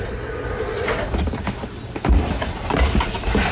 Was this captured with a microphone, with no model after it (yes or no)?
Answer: yes